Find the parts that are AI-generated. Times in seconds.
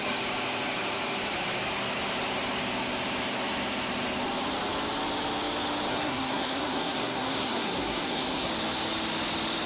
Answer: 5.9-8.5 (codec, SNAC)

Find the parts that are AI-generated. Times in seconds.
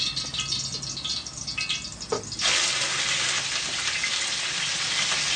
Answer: none